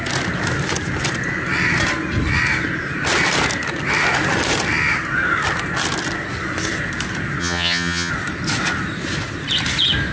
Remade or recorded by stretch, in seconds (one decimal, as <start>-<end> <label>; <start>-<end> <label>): 0.0-7.4 recorded; 7.4-8.1 remade; 8.1-10.1 recorded